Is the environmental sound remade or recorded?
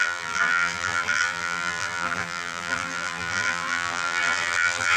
remade